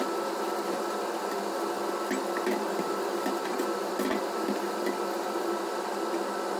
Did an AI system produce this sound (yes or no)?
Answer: no